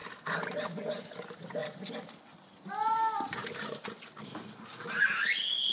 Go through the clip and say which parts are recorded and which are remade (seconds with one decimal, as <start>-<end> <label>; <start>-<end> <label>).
0.0-1.1 remade; 1.1-3.4 recorded; 3.4-5.3 remade; 5.3-5.7 recorded